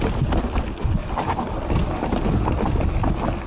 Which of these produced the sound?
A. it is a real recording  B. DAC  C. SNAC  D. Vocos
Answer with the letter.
A